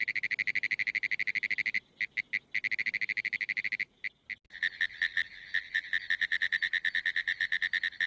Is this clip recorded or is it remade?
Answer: recorded